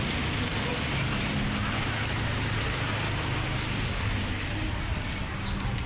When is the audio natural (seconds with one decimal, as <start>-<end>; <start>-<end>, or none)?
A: 0.0-5.9